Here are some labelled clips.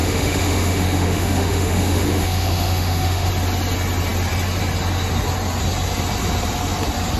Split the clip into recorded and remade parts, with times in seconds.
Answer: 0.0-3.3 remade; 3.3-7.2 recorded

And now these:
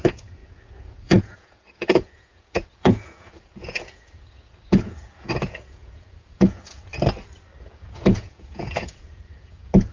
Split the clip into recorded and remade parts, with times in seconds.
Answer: 0.0-6.9 remade; 6.9-7.6 recorded; 7.6-9.9 remade